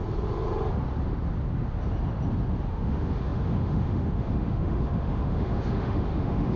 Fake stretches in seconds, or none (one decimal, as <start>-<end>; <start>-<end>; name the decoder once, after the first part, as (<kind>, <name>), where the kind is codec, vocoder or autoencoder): 2.7-6.6 (autoencoder, DAC-VAE)